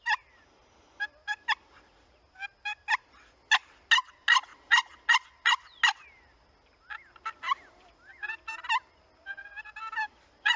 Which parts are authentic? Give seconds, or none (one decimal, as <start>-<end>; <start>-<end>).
0.0-10.6